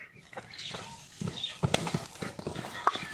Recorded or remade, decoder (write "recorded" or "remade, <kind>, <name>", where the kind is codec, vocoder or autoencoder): remade, codec, DAC